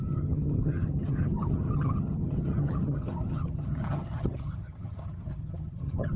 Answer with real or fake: fake